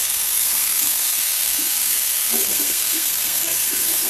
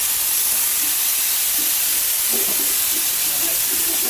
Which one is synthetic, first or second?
first